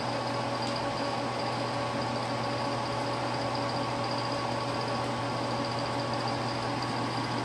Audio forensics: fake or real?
real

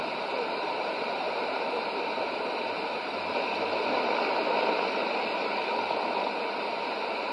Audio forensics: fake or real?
fake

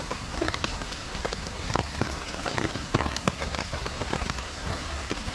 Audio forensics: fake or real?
fake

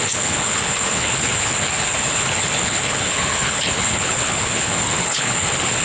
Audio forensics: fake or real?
fake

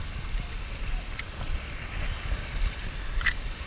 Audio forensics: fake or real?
real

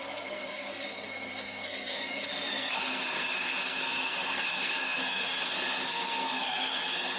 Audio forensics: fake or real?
fake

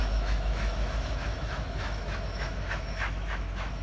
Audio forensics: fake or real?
fake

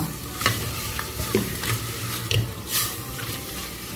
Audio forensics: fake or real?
fake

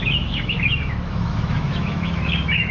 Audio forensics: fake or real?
fake